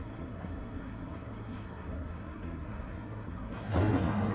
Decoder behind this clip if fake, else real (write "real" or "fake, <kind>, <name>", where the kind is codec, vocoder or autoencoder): fake, codec, SNAC